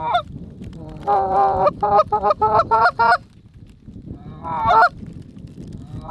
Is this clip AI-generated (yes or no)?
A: yes